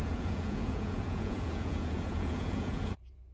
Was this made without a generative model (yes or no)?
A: no